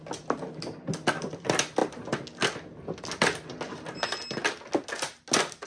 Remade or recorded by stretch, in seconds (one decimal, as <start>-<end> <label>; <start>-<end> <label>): 0.0-5.7 recorded